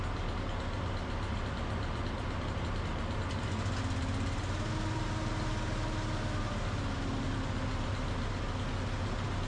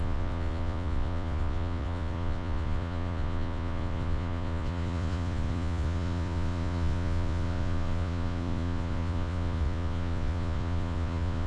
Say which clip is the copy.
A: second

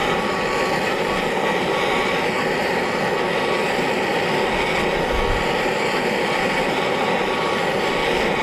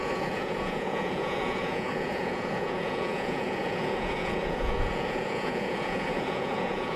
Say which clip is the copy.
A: second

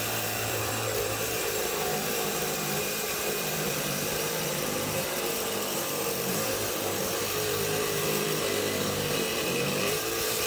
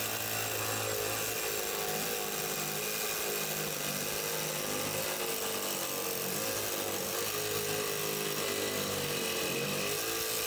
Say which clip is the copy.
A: first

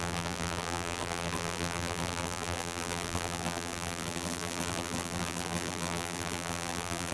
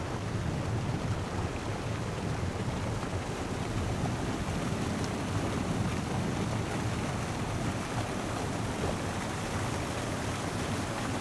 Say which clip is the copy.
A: first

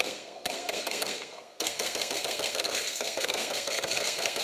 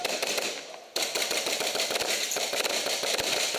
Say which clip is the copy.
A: first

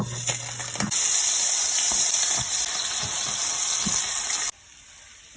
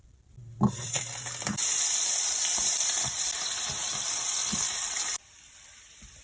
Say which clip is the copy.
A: second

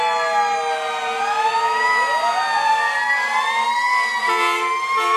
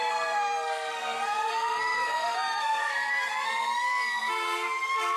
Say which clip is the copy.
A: second